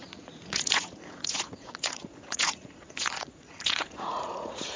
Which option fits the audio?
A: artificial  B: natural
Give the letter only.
A